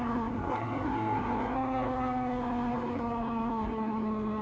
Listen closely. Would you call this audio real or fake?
fake